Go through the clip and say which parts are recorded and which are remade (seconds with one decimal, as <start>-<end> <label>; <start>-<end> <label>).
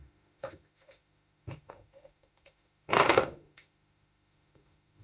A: 0.0-5.0 remade